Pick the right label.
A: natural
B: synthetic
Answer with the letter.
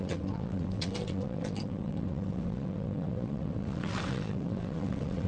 B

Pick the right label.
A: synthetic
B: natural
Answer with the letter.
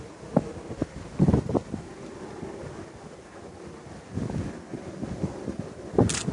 B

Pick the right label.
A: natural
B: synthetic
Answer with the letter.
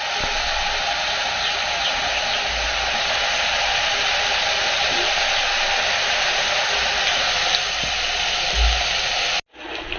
A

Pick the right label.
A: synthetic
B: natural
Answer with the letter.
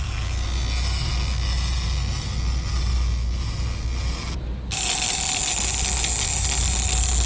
B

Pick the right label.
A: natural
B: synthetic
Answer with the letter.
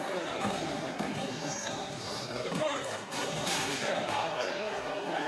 B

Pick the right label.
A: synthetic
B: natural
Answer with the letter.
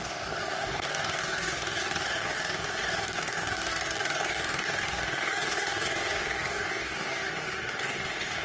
A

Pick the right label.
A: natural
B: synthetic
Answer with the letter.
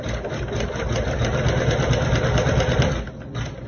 A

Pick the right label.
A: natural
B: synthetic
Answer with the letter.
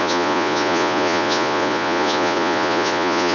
B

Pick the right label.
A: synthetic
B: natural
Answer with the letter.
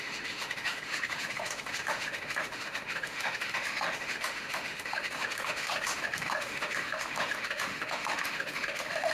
A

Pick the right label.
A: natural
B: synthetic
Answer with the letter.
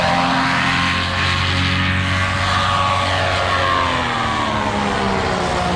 A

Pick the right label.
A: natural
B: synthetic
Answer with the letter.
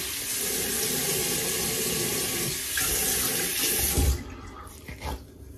A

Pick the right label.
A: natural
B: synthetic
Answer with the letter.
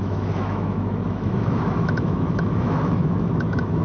B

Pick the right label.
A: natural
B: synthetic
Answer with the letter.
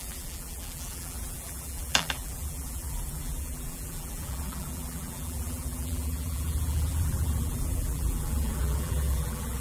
B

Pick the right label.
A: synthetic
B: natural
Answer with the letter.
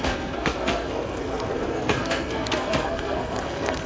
A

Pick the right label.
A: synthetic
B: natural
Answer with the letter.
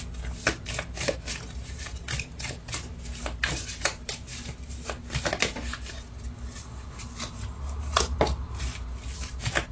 B